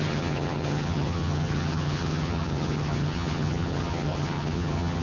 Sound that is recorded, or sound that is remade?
remade